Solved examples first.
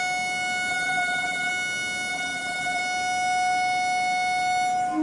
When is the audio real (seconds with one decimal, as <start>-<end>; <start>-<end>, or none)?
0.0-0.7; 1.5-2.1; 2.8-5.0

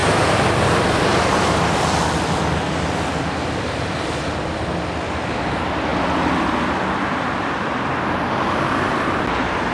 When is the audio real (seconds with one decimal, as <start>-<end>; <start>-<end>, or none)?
1.5-9.7

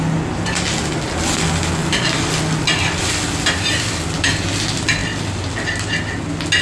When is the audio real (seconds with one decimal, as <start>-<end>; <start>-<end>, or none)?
0.0-1.8; 4.1-5.0; 6.1-6.6